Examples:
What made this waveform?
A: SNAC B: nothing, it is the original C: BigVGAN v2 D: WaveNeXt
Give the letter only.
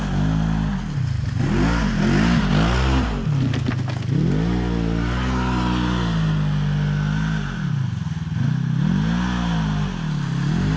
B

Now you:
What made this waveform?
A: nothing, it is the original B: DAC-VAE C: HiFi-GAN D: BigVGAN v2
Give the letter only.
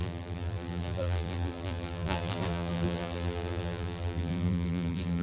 D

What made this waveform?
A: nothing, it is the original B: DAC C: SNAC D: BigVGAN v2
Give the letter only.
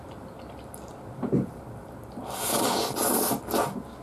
A